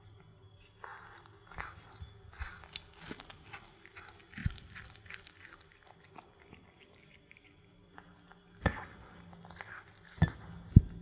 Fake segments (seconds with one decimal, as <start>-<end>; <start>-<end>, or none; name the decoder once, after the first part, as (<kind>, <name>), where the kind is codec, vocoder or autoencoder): 4.4-6.7 (vocoder, BigVGAN v2)